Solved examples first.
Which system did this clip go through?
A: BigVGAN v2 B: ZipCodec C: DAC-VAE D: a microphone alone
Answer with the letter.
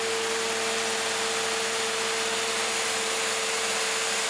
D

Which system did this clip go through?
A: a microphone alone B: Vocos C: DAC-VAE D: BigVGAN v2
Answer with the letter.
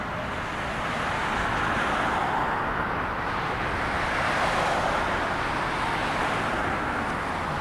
A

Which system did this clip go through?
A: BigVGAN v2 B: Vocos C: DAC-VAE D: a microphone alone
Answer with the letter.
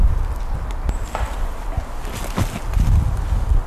D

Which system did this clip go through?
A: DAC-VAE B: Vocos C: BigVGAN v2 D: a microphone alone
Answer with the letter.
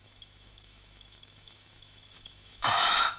A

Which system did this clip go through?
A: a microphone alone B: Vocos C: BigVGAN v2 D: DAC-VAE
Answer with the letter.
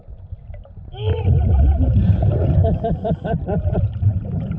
A